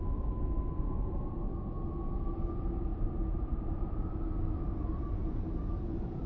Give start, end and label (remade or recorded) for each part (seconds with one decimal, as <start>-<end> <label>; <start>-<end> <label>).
0.0-6.3 recorded